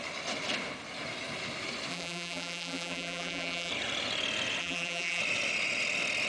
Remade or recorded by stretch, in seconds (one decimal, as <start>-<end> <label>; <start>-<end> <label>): 0.0-1.9 recorded; 1.9-3.7 remade; 3.7-4.6 recorded; 4.6-5.2 remade; 5.2-6.3 recorded